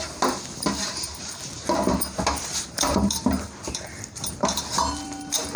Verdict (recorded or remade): remade